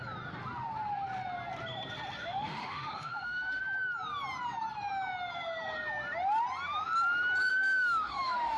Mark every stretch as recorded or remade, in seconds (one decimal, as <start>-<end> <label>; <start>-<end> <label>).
0.0-2.2 recorded; 2.2-3.6 remade; 3.6-7.5 recorded; 7.5-8.6 remade

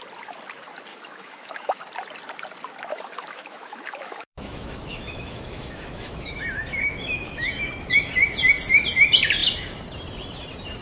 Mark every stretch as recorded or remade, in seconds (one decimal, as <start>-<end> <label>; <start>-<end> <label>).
0.0-0.9 recorded; 0.9-1.8 remade; 1.8-2.9 recorded; 2.9-8.1 remade; 8.1-10.8 recorded

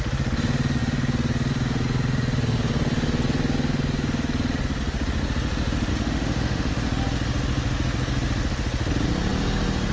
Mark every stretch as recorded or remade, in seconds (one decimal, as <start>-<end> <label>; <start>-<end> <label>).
0.0-5.9 recorded; 5.9-6.7 remade; 6.7-9.9 recorded

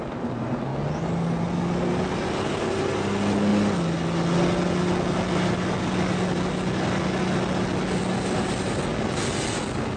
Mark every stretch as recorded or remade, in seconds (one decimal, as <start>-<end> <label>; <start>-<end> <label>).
0.0-10.0 recorded

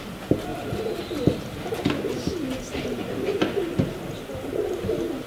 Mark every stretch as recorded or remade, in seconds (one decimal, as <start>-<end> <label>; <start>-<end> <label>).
0.0-5.3 recorded